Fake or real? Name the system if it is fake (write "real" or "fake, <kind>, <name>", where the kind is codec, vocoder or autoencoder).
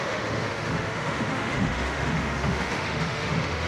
fake, autoencoder, DAC-VAE